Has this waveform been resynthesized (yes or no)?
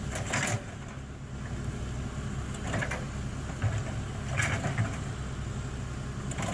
no